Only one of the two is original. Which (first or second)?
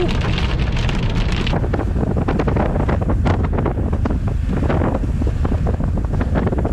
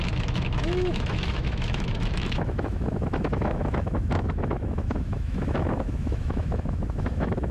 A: first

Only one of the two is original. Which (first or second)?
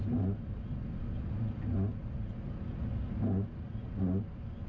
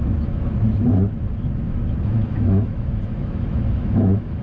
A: first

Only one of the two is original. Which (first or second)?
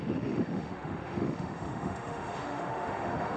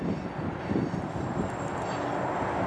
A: second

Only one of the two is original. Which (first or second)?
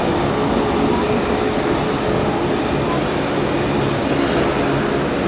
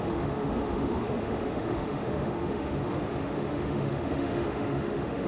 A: first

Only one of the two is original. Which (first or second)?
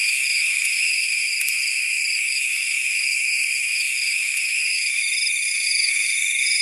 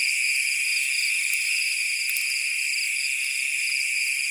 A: second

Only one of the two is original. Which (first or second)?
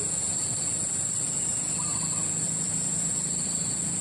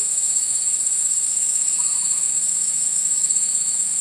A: first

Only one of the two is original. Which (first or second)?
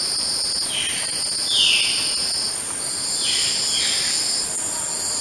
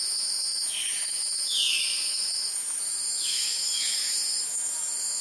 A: first